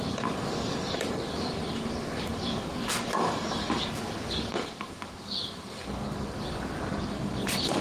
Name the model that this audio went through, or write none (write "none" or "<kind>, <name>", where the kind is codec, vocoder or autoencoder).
codec, DAC